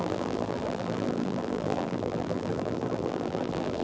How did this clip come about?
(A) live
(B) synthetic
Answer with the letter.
B